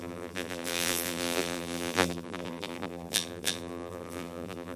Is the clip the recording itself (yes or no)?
no